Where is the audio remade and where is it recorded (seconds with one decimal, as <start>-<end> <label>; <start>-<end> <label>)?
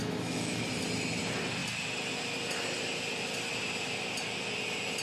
0.0-0.6 remade; 0.6-5.0 recorded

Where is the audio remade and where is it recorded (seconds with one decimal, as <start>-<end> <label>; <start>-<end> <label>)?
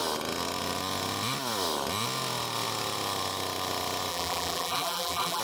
0.0-4.1 recorded; 4.1-5.4 remade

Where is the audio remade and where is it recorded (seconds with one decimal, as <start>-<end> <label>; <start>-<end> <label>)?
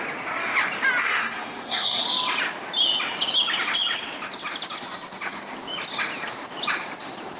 0.0-1.0 recorded; 1.0-2.0 remade; 2.0-7.4 recorded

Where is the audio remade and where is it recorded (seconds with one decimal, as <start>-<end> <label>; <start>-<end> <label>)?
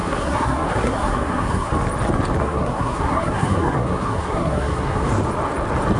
0.0-1.7 remade; 1.7-2.4 recorded; 2.4-5.1 remade; 5.1-6.0 recorded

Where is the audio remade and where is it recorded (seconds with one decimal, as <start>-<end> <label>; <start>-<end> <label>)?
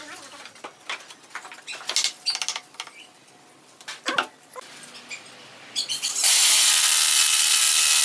0.0-6.2 recorded; 6.2-6.7 remade; 6.7-8.0 recorded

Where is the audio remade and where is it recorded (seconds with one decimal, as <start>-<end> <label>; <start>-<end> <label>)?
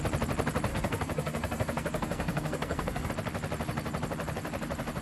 0.0-0.7 recorded; 0.7-3.1 remade; 3.1-5.0 recorded